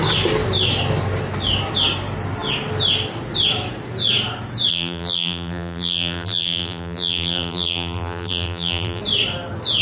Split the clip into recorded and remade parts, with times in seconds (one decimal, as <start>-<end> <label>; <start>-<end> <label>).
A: 0.0-4.7 recorded; 4.7-9.0 remade; 9.0-9.8 recorded

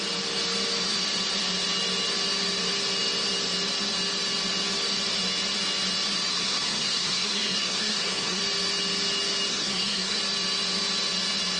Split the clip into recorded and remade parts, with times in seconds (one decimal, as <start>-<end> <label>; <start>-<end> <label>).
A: 0.0-6.3 recorded; 6.3-8.4 remade; 8.4-9.5 recorded; 9.5-10.2 remade; 10.2-11.6 recorded

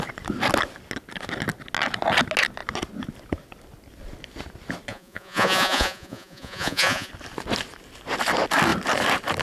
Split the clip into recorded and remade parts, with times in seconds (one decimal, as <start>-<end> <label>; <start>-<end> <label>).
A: 0.0-4.9 recorded; 4.9-7.1 remade; 7.1-9.4 recorded